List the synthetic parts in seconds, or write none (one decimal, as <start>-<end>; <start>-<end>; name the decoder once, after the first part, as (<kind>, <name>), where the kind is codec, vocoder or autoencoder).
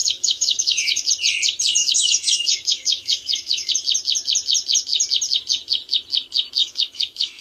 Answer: 0.0-1.1 (codec, DAC); 1.8-3.7; 6.6-7.4